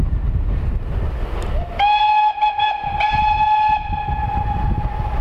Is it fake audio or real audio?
real